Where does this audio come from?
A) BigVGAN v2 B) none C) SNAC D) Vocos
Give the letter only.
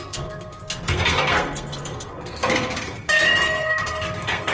C